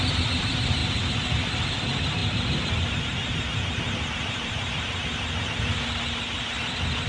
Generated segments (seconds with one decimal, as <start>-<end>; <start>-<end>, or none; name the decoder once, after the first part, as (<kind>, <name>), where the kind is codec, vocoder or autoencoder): 0.0-0.8 (vocoder, BigVGAN v2); 1.4-2.2; 4.2-7.1